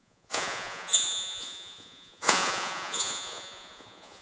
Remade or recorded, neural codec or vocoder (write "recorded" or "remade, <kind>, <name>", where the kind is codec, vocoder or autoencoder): remade, vocoder, Vocos